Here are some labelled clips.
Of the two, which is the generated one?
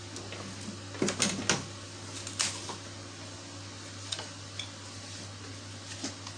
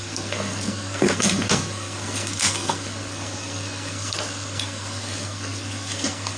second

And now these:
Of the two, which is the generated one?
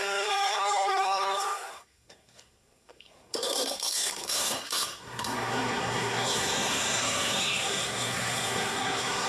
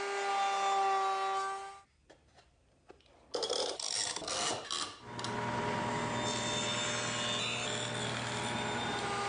first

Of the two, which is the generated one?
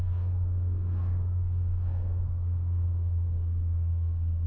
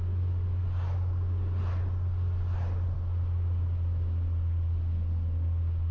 first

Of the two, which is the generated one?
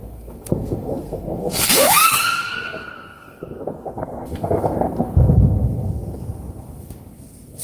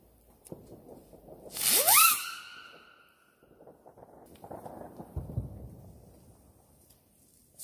first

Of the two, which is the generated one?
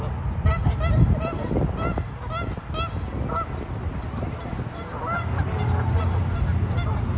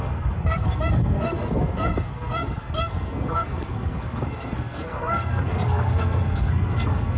second